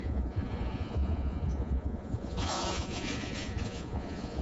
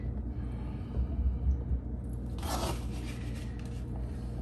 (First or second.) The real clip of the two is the second